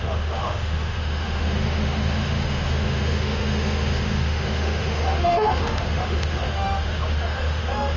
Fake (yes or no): yes